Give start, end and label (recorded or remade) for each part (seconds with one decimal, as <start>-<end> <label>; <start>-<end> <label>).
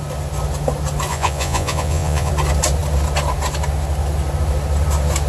0.0-1.1 recorded; 1.1-2.3 remade; 2.3-5.3 recorded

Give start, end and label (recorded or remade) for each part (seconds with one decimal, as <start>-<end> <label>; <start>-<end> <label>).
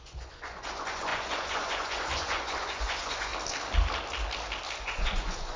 0.0-3.3 remade; 3.3-4.8 recorded; 4.8-5.6 remade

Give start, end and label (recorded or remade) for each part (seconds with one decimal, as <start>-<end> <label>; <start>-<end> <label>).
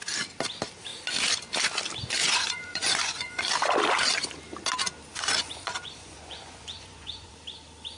0.0-2.2 recorded; 2.2-3.4 remade; 3.4-5.1 recorded; 5.1-7.3 remade; 7.3-8.0 recorded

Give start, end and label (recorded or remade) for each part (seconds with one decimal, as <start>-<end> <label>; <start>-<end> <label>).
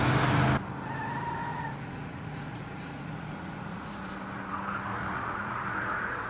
0.0-1.5 recorded; 1.5-4.1 remade; 4.1-5.0 recorded; 5.0-6.3 remade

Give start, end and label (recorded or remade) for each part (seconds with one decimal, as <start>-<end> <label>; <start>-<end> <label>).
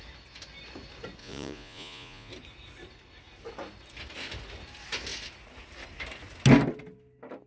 0.0-1.2 recorded; 1.2-2.3 remade; 2.3-7.5 recorded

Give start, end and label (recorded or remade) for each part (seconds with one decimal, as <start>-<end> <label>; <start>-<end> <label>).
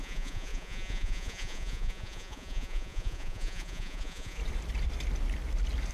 0.0-4.4 remade; 4.4-5.9 recorded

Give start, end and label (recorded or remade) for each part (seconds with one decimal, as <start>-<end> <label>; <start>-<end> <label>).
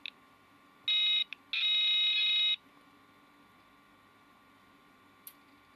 0.0-5.8 recorded